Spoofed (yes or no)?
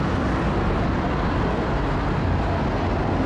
no